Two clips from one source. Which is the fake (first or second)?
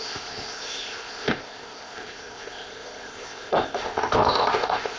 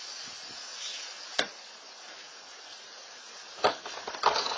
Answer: first